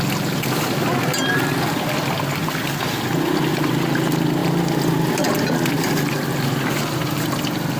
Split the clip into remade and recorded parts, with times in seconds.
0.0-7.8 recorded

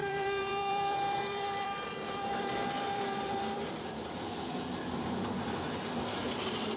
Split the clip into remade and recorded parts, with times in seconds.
0.0-6.8 remade

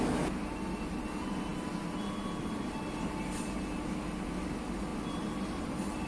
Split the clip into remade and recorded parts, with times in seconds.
0.0-4.9 recorded; 4.9-6.1 remade